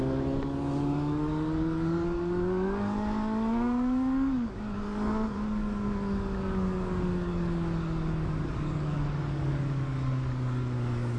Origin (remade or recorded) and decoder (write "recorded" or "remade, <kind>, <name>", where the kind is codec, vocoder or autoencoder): remade, codec, DAC